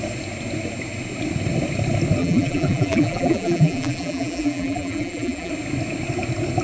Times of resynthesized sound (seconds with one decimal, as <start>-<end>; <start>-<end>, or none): 2.2-5.5